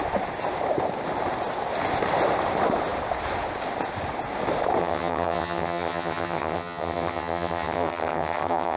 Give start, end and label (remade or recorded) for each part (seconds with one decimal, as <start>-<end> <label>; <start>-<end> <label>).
0.0-4.8 recorded; 4.8-8.8 remade